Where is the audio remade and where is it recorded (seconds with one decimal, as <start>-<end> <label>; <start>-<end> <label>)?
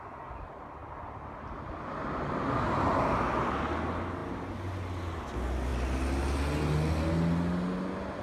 0.0-8.2 recorded